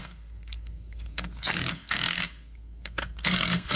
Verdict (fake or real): fake